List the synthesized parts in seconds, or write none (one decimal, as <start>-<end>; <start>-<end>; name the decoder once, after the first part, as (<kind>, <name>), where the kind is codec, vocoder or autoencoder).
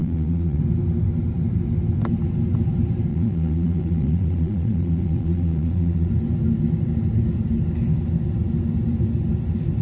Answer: 0.0-0.6 (vocoder, Vocos); 3.1-6.1